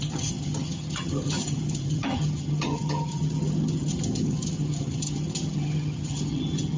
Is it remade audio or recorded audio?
remade